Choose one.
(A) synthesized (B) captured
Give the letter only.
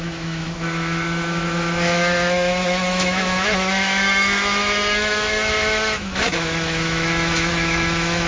A